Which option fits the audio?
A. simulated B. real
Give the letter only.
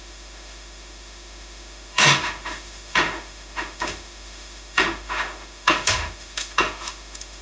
A